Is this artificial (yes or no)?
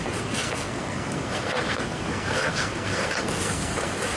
yes